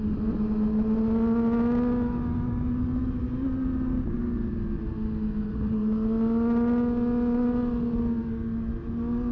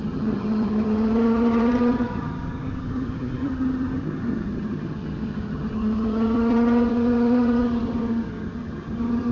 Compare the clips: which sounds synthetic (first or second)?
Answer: second